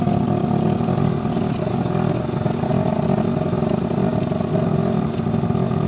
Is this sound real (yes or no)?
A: yes